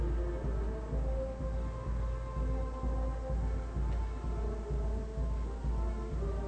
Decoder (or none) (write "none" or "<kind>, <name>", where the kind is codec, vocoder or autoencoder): none